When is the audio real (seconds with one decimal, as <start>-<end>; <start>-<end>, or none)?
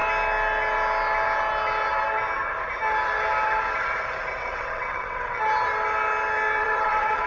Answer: 0.0-4.4; 5.4-6.6